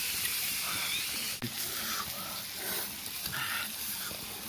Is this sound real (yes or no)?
yes